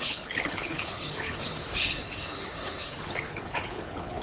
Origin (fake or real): fake